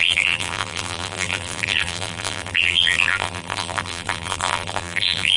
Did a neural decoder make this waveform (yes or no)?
yes